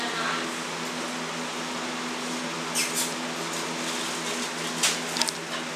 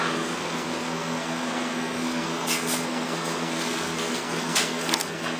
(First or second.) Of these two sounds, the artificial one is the second